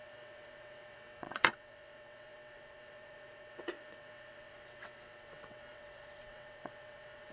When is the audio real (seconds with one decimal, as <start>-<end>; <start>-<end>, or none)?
none